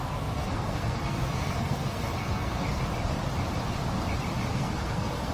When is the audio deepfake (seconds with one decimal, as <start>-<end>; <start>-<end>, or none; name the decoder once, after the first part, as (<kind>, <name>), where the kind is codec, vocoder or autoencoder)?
0.0-2.8 (codec, SNAC); 4.5-5.3